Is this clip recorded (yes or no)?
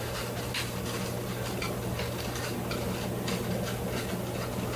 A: yes